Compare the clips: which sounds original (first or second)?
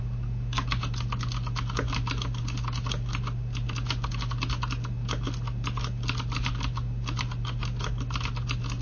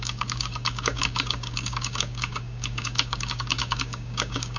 first